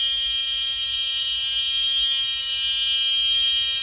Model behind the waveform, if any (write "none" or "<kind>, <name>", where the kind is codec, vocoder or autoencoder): none